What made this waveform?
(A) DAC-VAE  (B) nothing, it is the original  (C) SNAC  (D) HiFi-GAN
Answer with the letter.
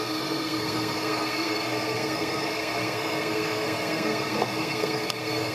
C